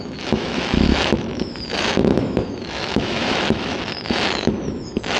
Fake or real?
fake